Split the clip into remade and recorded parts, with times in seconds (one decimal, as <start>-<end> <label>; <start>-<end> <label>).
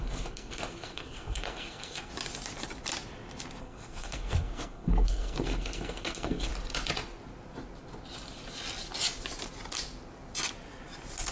0.0-2.1 remade; 2.1-3.6 recorded; 3.6-6.5 remade; 6.5-11.3 recorded